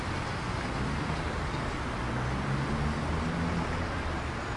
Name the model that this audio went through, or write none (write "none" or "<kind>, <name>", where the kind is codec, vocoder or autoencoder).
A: none